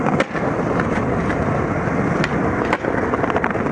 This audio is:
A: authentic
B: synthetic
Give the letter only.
A